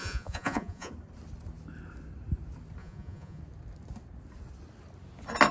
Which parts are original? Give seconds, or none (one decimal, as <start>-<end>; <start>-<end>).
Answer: 0.9-2.8; 3.4-5.5